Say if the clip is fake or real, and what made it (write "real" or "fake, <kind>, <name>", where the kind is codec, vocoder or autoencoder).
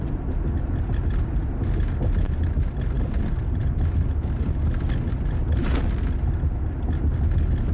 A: real